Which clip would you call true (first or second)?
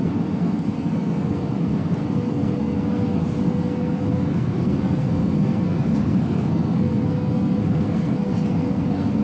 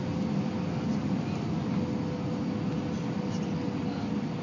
second